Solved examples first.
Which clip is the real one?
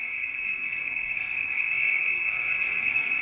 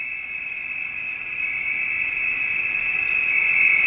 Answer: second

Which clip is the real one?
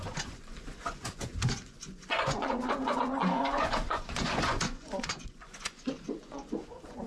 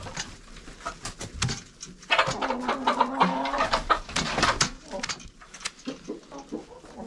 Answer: second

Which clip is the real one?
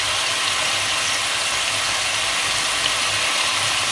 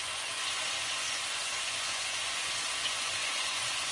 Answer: first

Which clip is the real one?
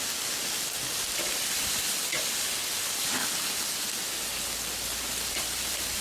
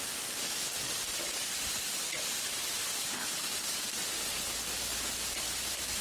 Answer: first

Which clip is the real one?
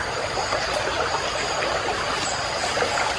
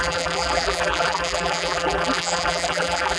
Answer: first